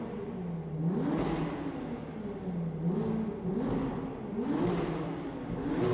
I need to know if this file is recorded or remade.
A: recorded